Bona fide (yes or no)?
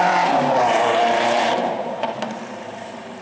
no